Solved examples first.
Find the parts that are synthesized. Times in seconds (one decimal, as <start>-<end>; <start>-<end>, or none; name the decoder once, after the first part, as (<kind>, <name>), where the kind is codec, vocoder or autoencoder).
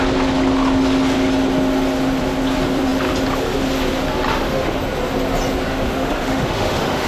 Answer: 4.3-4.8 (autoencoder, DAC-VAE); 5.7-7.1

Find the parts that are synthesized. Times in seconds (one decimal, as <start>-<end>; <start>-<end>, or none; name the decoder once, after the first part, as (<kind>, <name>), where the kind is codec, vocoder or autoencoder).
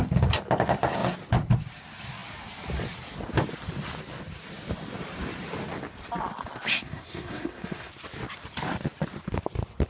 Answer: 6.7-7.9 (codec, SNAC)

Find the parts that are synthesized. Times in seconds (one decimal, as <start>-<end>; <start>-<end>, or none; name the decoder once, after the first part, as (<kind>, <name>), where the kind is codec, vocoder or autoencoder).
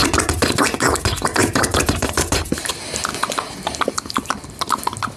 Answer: 0.0-0.7 (vocoder, BigVGAN v2); 1.4-2.7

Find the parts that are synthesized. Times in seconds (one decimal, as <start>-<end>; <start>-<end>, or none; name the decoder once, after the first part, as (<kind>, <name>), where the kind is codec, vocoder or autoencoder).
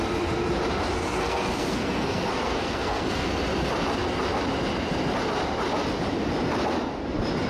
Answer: 1.0-3.3 (codec, SNAC)